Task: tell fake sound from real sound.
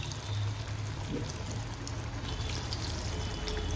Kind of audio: real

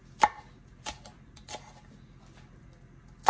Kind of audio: real